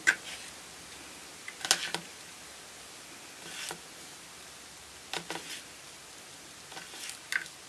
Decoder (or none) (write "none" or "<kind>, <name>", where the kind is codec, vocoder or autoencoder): none